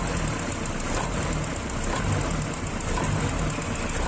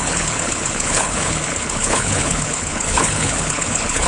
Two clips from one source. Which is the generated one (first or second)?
second